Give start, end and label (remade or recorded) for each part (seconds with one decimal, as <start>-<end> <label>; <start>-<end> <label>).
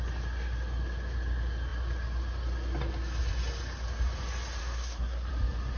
0.0-4.6 recorded; 4.6-5.3 remade; 5.3-5.8 recorded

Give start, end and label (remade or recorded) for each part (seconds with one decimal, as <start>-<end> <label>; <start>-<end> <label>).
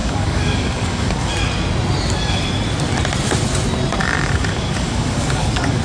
0.0-1.3 remade; 1.3-4.0 recorded; 4.0-5.8 remade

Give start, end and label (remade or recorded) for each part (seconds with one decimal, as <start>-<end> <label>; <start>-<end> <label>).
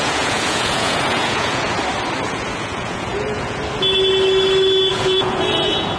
0.0-1.7 remade; 1.7-2.2 recorded; 2.2-3.6 remade; 3.6-4.9 recorded; 4.9-6.0 remade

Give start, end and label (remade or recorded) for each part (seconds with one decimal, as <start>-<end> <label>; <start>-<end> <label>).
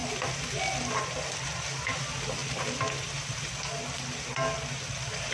0.0-5.3 recorded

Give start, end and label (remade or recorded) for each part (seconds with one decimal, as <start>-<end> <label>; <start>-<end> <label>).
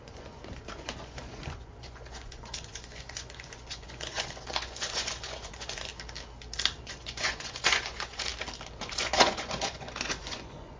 0.0-5.9 remade; 5.9-6.8 recorded; 6.8-8.3 remade; 8.3-8.8 recorded; 8.8-10.8 remade